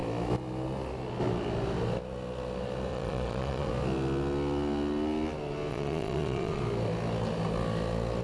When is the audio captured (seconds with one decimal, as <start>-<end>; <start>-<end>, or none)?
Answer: 0.0-2.9; 3.7-5.7; 6.6-8.2